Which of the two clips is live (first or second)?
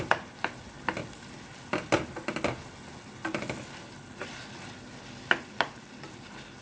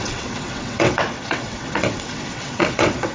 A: first